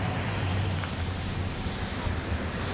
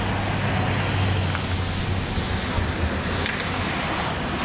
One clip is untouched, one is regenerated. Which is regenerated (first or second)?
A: first